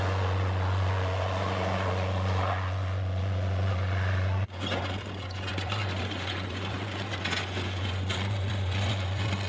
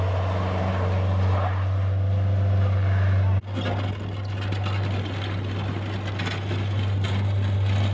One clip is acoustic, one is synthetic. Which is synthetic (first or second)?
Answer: first